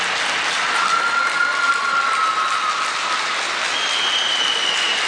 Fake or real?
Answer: real